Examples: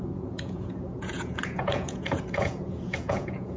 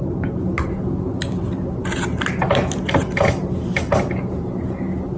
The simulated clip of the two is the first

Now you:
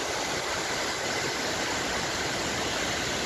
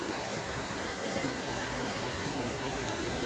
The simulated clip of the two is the second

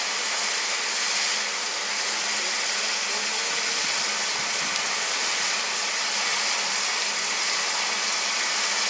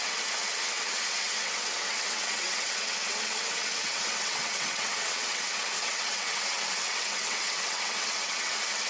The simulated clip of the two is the second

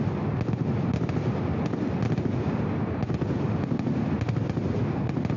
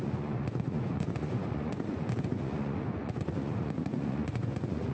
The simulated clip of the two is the second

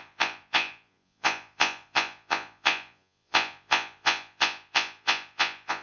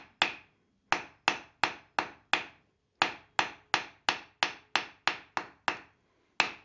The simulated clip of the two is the first